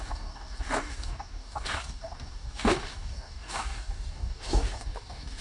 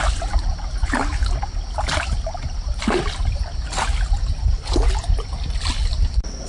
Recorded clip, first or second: second